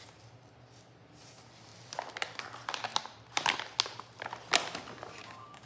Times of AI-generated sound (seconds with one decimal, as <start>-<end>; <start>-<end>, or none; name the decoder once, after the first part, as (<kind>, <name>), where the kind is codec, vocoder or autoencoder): 5.2-5.7 (codec, DAC)